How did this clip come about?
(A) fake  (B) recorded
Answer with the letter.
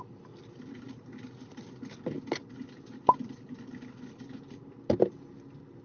B